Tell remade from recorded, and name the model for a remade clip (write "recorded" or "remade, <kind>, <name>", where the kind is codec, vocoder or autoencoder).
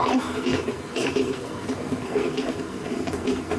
remade, codec, SNAC